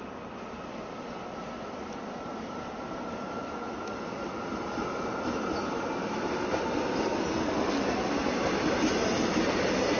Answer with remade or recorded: recorded